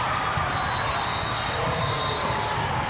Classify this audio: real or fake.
real